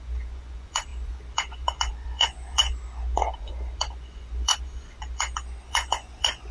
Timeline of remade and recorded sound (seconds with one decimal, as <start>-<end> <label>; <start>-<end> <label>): 0.0-6.5 remade